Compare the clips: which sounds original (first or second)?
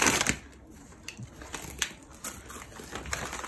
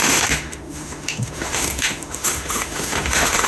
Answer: first